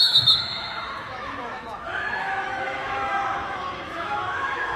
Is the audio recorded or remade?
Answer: remade